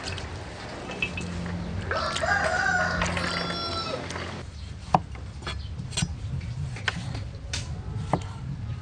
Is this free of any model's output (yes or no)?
yes